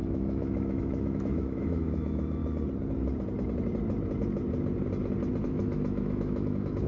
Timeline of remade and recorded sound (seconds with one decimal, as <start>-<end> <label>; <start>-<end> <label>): 0.0-2.4 remade; 2.4-5.4 recorded; 5.4-6.9 remade